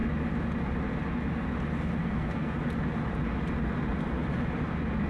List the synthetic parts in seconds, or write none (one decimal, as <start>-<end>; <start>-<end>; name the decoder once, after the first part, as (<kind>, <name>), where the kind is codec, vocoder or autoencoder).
2.0-2.6 (codec, SNAC)